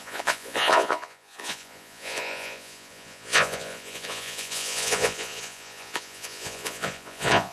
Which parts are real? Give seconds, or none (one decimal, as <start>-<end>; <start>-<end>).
none